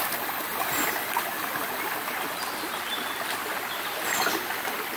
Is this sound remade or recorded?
recorded